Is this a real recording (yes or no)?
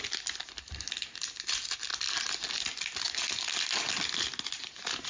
yes